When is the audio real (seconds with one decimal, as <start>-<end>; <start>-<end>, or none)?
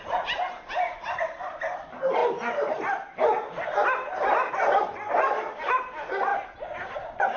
6.3-7.4